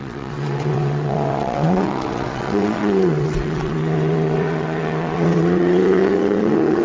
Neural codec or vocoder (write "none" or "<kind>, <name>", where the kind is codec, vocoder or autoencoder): vocoder, WaveNeXt